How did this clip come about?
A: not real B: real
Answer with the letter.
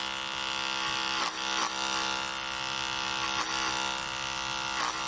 B